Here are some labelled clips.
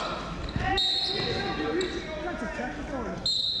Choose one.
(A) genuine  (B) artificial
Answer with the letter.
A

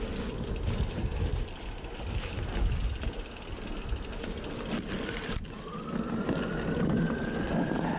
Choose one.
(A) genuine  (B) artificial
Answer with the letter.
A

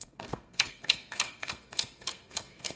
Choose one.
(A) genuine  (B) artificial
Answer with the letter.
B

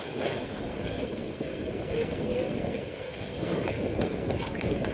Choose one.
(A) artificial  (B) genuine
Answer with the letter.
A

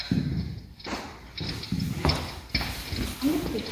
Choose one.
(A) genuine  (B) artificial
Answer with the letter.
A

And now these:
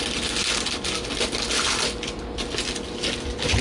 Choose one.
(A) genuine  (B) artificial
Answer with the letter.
A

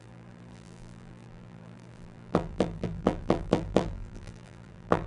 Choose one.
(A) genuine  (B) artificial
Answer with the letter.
B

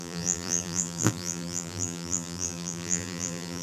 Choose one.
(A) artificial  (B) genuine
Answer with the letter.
A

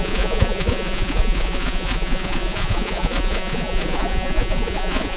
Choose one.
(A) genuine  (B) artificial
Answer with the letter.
B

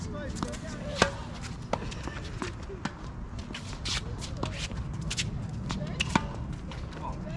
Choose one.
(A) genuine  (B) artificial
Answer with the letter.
A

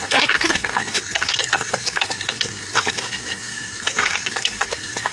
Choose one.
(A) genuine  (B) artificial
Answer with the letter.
B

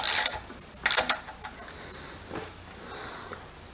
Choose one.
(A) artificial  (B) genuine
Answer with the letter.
B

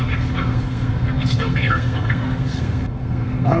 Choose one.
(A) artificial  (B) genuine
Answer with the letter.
A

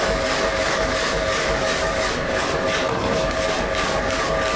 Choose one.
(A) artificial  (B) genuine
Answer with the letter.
A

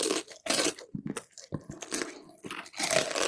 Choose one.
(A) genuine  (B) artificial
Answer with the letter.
A